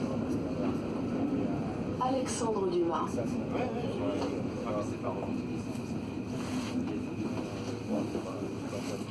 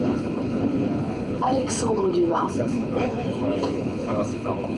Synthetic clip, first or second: second